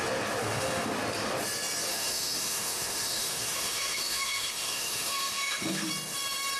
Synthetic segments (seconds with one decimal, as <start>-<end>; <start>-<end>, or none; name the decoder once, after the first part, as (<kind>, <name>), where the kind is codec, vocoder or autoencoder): 0.4-0.9 (autoencoder, DAC-VAE); 1.9-5.9